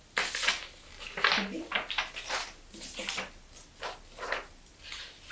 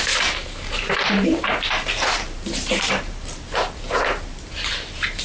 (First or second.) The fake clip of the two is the second